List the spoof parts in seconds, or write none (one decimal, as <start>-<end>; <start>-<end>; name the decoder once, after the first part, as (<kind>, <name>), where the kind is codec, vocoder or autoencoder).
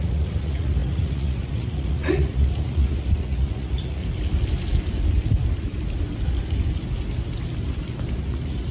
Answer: 0.0-4.0 (vocoder, Vocos); 8.2-8.7